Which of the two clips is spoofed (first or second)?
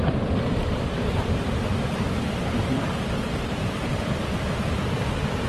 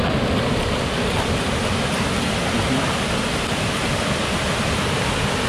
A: first